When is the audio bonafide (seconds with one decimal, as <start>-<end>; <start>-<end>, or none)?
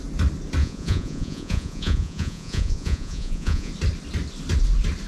0.0-0.6; 3.7-5.1